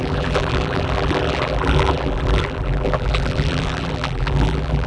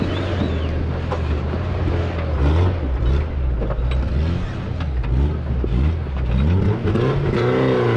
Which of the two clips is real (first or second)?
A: second